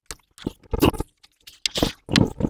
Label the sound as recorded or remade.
recorded